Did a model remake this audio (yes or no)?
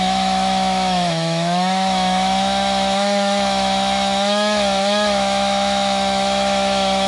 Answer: yes